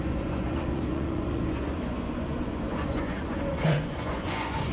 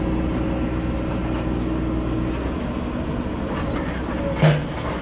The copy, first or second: first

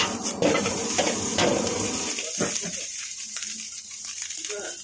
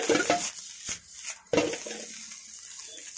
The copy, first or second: first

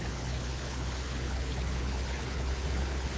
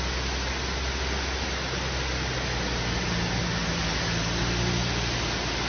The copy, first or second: first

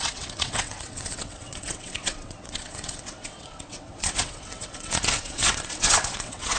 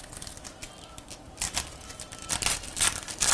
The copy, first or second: first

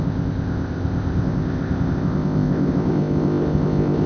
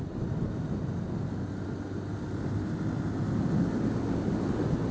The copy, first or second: first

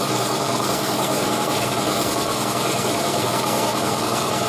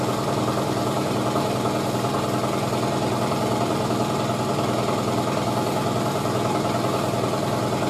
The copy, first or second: first